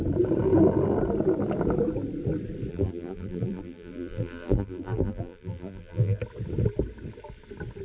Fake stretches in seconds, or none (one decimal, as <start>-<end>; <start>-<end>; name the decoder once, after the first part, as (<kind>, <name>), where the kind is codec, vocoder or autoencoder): 2.7-6.2 (vocoder, BigVGAN v2)